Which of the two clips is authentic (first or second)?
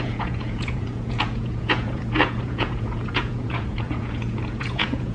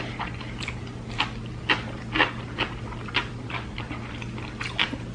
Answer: second